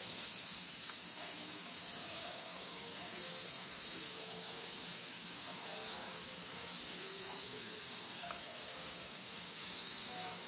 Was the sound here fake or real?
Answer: fake